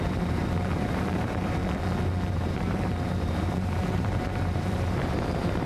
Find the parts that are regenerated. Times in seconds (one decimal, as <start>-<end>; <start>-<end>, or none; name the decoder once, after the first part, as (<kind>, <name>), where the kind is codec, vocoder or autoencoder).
0.0-1.6 (vocoder, BigVGAN v2); 2.3-5.7